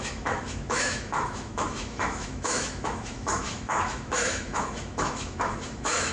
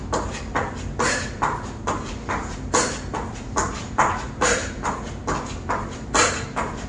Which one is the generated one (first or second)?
first